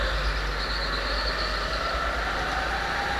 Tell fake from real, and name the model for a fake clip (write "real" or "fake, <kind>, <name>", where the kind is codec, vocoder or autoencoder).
real